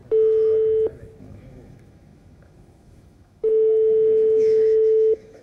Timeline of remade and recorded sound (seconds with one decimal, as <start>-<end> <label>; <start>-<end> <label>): 0.0-1.2 recorded; 1.2-5.4 remade